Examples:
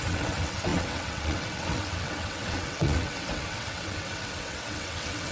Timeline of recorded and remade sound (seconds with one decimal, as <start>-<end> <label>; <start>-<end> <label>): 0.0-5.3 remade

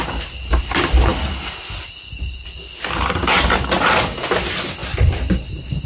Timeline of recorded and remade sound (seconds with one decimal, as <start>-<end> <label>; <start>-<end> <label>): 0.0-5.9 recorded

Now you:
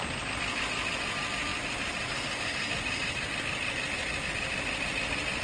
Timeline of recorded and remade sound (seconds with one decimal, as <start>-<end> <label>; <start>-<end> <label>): 0.0-5.4 recorded

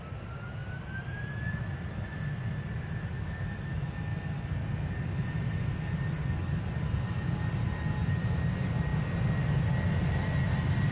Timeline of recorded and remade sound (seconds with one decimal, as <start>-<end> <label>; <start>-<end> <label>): 0.0-10.9 recorded

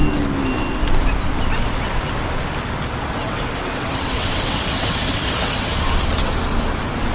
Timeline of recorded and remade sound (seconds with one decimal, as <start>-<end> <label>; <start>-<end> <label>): 0.0-3.2 recorded; 3.2-5.7 remade; 5.7-7.1 recorded

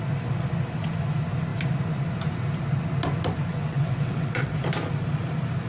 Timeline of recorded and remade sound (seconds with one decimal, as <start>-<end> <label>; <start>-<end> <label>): 0.0-3.5 recorded; 3.5-4.5 remade; 4.5-5.7 recorded

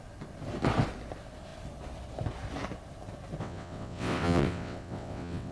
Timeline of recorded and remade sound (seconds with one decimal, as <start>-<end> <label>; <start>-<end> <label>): 0.0-3.4 recorded; 3.4-5.5 remade